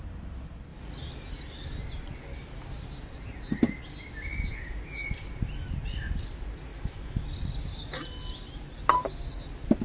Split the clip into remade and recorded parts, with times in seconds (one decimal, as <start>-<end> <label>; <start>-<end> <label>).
0.0-6.7 recorded; 6.7-7.2 remade; 7.2-9.8 recorded

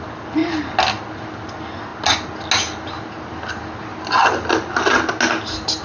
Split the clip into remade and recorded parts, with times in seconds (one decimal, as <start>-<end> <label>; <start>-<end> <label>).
0.0-5.8 recorded